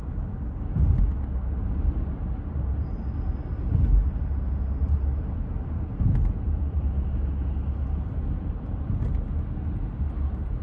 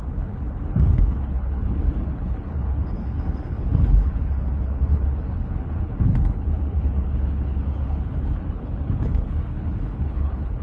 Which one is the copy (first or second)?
second